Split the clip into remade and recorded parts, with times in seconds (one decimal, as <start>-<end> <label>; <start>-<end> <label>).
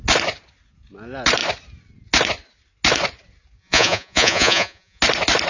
0.0-3.6 recorded; 3.6-5.0 remade; 5.0-5.5 recorded